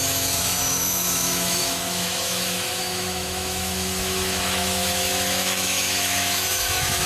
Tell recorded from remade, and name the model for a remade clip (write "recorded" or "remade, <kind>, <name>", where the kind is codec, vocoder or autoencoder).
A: remade, autoencoder, DAC-VAE